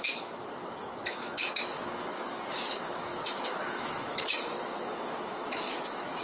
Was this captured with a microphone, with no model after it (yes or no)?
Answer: no